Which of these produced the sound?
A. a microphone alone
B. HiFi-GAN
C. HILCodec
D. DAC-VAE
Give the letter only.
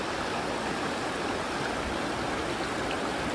A